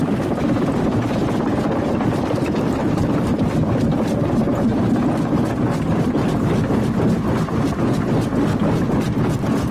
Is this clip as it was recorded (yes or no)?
yes